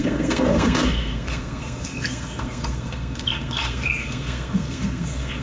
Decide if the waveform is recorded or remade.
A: remade